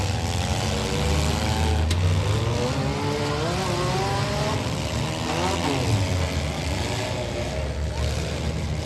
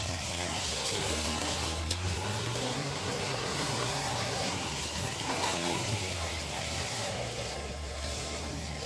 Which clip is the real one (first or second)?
first